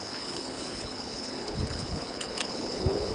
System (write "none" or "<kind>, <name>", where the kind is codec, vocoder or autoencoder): codec, HILCodec